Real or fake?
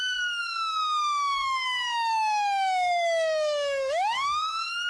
fake